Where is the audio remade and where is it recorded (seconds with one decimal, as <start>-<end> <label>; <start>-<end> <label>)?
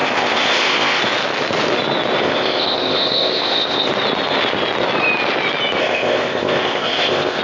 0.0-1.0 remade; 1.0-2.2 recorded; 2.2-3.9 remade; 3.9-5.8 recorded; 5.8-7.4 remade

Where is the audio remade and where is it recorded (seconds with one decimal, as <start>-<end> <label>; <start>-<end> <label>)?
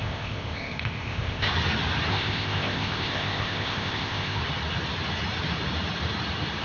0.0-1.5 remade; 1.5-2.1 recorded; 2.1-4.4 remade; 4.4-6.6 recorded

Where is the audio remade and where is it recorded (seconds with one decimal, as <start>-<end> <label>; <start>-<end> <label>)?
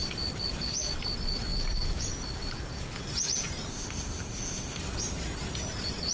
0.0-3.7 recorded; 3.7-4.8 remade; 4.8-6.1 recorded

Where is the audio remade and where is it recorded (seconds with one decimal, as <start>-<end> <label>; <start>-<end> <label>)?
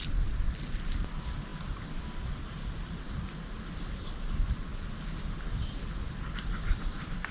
0.0-7.3 recorded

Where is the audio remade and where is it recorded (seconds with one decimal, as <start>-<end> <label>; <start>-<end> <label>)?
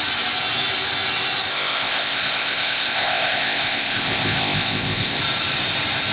0.0-1.5 recorded; 1.5-5.2 remade; 5.2-6.1 recorded